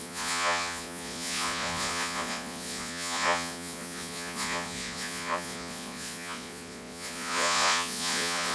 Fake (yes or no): yes